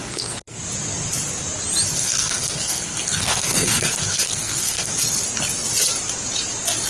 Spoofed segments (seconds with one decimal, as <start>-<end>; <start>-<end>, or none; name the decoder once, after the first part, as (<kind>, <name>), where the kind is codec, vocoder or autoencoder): 0.0-0.6 (codec, SNAC); 2.0-4.9